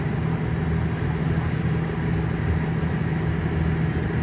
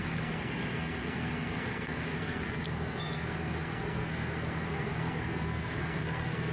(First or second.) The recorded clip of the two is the first